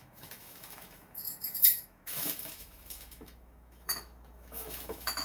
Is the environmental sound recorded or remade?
remade